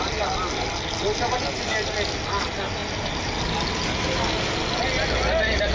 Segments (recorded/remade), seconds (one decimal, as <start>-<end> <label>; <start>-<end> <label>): 0.0-5.7 recorded